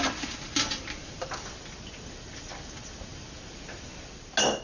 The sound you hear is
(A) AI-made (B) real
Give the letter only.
B